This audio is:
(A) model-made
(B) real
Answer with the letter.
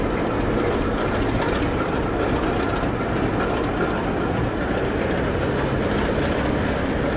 B